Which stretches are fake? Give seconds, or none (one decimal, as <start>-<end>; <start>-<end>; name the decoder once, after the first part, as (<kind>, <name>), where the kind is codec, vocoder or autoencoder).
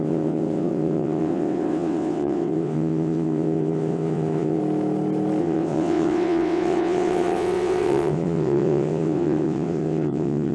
0.0-4.6 (vocoder, WaveNeXt); 5.4-10.5